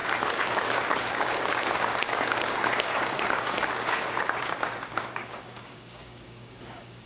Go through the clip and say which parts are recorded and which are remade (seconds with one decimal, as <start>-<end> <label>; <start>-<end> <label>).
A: 0.0-7.1 remade